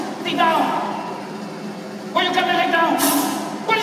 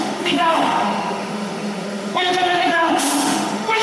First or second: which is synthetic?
second